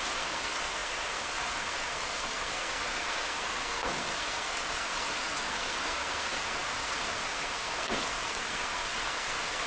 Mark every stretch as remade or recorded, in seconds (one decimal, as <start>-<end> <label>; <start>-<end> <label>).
0.0-9.7 remade